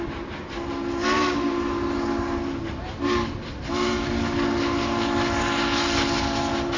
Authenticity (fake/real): real